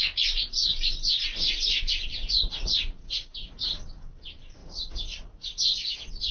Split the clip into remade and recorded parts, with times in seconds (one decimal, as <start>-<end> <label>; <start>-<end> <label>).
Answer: 0.0-2.2 recorded; 2.2-3.8 remade; 3.8-4.6 recorded; 4.6-6.3 remade